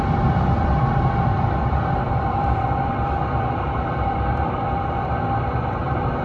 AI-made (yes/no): yes